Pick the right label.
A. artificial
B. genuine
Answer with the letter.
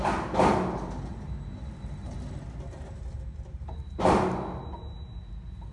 B